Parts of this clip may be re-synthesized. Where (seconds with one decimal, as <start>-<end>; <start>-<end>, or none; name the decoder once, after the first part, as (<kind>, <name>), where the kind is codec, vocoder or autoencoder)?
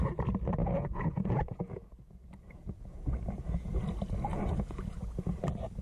0.6-3.8 (vocoder, Vocos); 4.3-5.0